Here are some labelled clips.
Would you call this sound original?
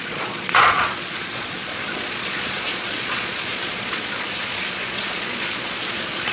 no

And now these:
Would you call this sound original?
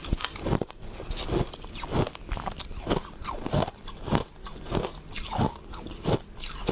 yes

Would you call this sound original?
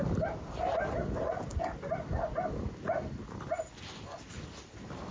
yes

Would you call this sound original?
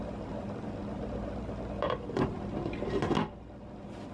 yes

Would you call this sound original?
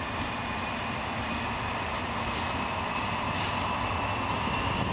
yes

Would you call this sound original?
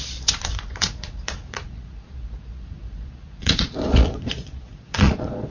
no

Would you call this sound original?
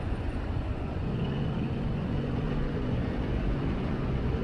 no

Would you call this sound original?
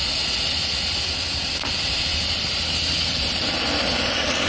yes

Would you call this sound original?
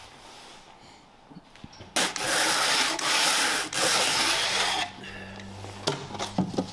yes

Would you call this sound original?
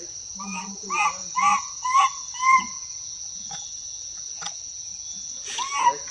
no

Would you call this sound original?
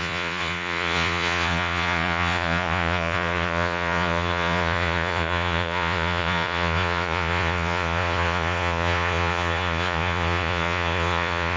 no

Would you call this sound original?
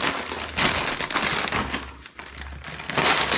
yes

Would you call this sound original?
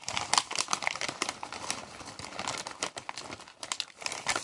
yes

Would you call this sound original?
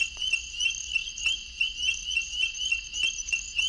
no